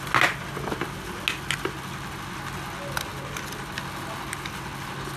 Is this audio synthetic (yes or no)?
no